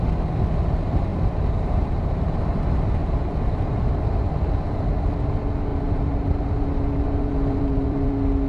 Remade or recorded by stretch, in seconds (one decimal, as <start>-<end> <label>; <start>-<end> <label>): 0.0-1.1 recorded; 1.1-2.2 remade; 2.2-3.0 recorded; 3.0-4.0 remade; 4.0-5.7 recorded; 5.7-8.1 remade; 8.1-8.5 recorded